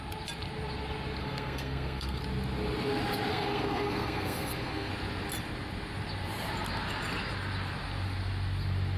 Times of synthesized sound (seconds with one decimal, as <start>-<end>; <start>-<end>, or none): 1.2-2.2; 3.3-4.9